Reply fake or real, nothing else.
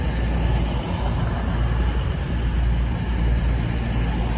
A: real